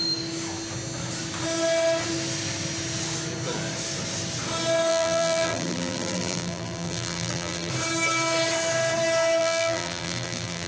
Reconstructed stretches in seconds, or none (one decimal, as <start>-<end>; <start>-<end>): 4.9-7.7; 9.4-10.7